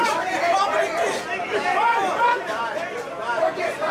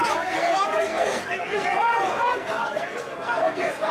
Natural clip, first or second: first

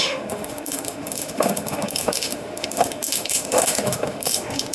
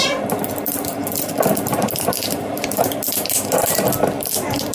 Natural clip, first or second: second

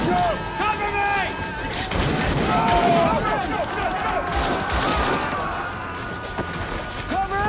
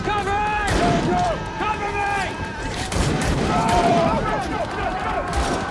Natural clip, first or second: first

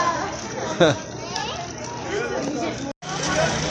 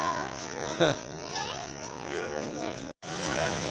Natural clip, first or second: first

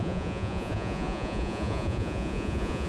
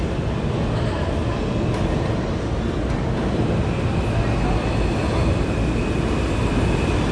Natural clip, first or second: second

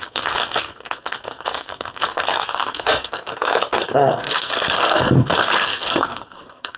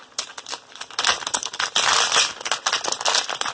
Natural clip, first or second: second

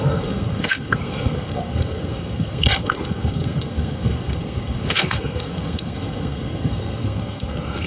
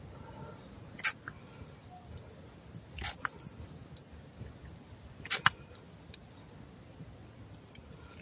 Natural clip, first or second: second